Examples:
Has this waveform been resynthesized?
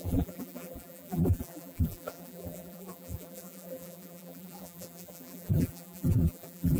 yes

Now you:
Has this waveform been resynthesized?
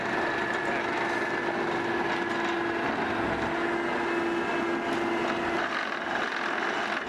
no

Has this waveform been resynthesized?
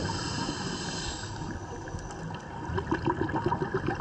no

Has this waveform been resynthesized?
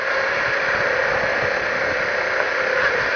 no